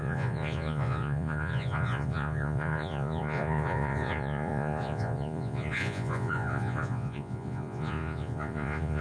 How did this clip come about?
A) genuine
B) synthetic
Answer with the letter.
B